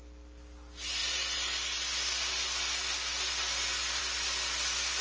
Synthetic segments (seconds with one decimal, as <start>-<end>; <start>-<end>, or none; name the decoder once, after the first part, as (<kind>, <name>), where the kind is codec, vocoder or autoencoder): none